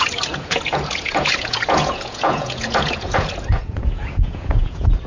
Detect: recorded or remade remade